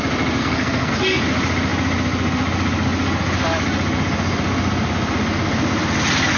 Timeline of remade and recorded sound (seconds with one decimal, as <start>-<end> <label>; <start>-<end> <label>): 0.0-0.4 recorded; 0.4-0.9 remade; 0.9-6.4 recorded